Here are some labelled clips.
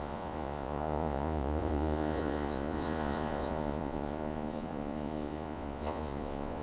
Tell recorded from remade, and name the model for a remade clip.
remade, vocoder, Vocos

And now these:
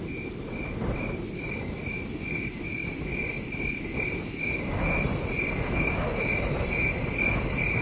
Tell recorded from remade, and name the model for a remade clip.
recorded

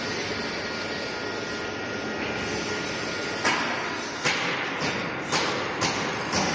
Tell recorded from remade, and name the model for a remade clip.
recorded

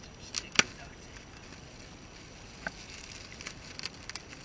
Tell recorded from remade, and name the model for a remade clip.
recorded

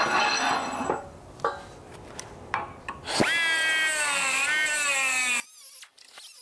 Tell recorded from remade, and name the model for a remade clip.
recorded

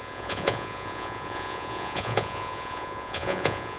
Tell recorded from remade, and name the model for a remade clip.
remade, vocoder, Vocos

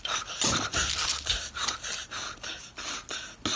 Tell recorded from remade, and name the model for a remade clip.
recorded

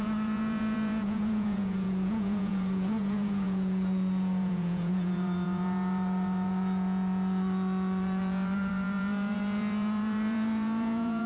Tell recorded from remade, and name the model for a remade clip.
remade, vocoder, Vocos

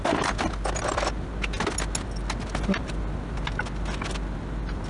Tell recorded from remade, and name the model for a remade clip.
recorded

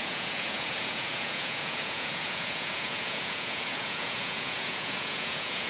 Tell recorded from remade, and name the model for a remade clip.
remade, vocoder, Vocos